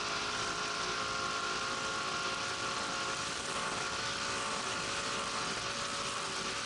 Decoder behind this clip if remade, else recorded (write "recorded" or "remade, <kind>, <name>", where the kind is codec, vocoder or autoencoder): recorded